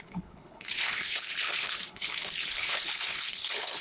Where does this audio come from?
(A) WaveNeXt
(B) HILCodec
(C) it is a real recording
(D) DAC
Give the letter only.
B